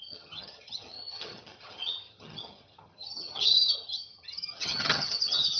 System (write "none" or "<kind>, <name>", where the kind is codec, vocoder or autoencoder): vocoder, HiFi-GAN